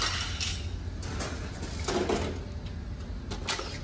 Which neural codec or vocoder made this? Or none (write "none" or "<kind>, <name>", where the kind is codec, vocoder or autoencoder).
none